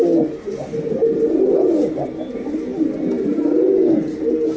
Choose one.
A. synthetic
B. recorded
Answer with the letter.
B